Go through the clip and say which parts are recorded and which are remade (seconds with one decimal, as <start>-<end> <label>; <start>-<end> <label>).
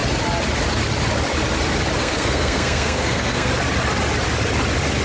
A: 0.0-2.0 recorded; 2.0-3.5 remade; 3.5-5.0 recorded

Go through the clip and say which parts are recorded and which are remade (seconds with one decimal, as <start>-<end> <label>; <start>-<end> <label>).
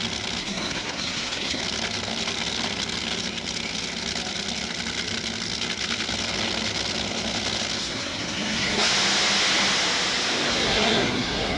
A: 0.0-0.4 recorded; 0.4-1.6 remade; 1.6-7.8 recorded; 7.8-8.9 remade; 8.9-10.5 recorded; 10.5-11.6 remade